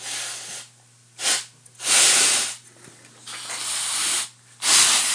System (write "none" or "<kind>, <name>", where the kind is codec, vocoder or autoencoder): none